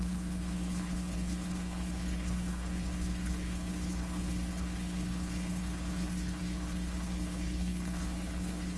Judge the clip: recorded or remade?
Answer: remade